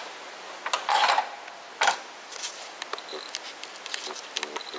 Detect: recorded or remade recorded